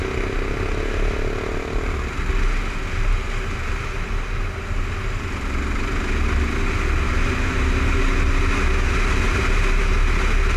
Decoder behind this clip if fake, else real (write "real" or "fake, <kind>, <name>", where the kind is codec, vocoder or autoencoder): real